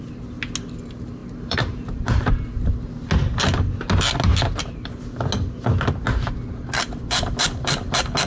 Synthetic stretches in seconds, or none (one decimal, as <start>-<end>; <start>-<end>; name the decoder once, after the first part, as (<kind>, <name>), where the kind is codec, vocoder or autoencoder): 1.2-2.3 (vocoder, BigVGAN v2); 4.3-4.9